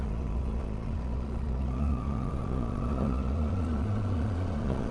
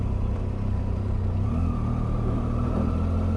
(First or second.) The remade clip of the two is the first